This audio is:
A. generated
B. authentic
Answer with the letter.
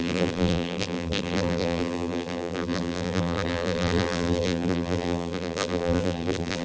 A